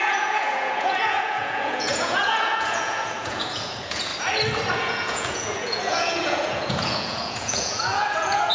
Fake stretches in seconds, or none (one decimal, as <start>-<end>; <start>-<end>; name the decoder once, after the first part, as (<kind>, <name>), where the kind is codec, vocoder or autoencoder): 0.0-4.1 (vocoder, Vocos); 4.8-8.5